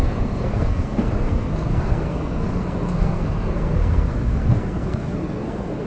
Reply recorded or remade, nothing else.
remade